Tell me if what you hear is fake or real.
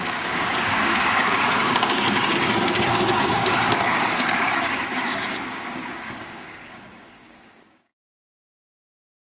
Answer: fake